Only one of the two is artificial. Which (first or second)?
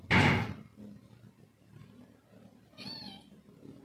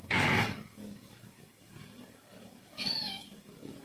second